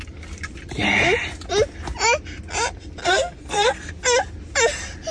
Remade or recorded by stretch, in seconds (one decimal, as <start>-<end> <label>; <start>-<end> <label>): 0.0-3.0 recorded; 3.0-3.9 remade; 3.9-5.1 recorded